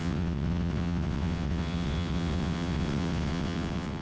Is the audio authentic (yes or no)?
no